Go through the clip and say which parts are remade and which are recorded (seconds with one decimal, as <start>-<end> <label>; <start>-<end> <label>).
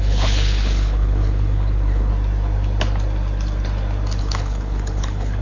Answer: 0.0-2.1 remade; 2.1-4.2 recorded; 4.2-5.4 remade